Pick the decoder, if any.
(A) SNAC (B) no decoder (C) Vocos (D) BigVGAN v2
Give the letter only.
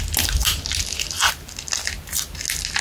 B